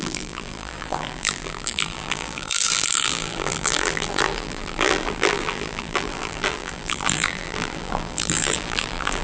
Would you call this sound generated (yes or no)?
yes